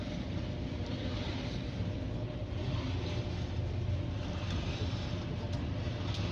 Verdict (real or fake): real